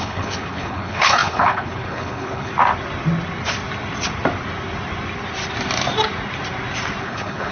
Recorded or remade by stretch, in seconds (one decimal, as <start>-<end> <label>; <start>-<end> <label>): 0.0-2.5 remade; 2.5-7.0 recorded; 7.0-7.5 remade